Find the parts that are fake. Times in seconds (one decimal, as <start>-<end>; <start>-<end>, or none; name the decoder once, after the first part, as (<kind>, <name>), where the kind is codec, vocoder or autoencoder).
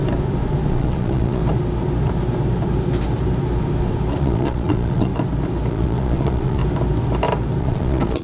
0.7-1.4 (vocoder, Vocos); 4.2-5.1; 5.7-6.6; 7.6-8.2